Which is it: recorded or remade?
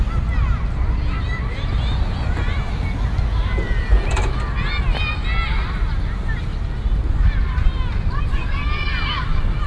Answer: recorded